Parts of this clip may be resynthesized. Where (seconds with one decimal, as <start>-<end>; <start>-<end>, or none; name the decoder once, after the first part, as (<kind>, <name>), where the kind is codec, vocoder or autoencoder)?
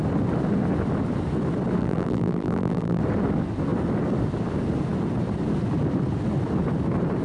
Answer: 1.8-3.0 (vocoder, BigVGAN v2)